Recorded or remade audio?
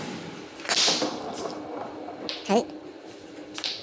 recorded